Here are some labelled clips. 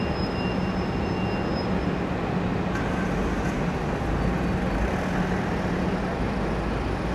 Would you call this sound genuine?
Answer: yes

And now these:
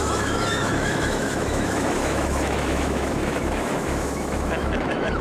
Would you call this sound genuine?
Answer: no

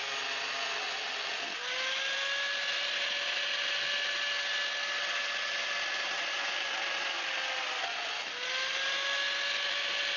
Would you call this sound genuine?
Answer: yes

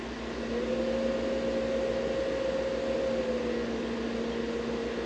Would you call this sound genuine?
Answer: yes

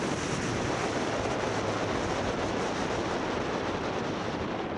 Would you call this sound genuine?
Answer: yes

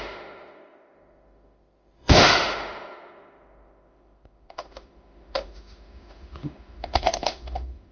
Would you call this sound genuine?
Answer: no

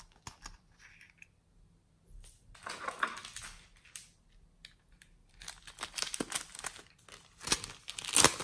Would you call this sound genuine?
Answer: yes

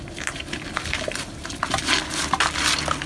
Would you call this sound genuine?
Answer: yes